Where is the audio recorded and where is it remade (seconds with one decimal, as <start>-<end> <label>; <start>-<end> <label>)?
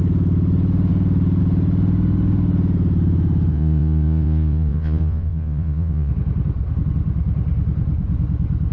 0.0-3.5 recorded; 3.5-6.1 remade; 6.1-8.7 recorded